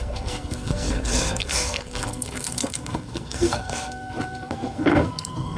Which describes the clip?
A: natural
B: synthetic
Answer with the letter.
B